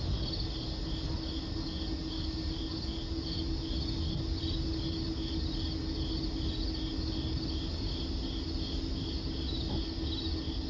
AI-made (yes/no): no